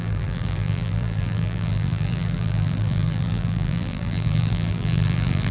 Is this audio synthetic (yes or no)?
yes